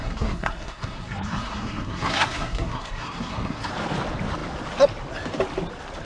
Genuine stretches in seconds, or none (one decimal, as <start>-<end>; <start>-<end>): 3.7-6.1